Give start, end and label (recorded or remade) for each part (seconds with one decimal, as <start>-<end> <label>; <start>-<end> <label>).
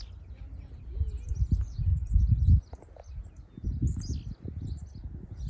0.0-1.9 recorded; 1.9-3.1 remade; 3.1-5.5 recorded